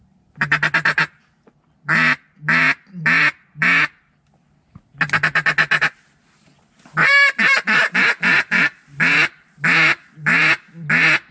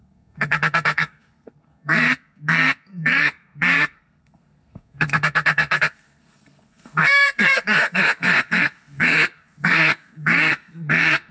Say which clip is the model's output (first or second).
second